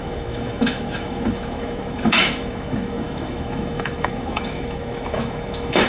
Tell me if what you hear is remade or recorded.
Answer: remade